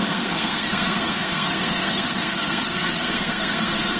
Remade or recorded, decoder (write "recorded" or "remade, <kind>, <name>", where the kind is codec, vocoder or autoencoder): remade, codec, SNAC